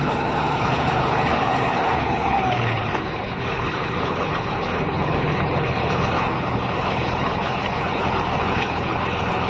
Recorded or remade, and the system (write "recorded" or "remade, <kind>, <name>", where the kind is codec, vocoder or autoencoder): remade, codec, HILCodec